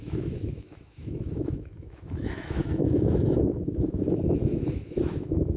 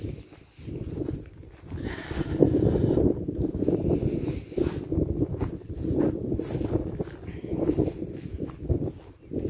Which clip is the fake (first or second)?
first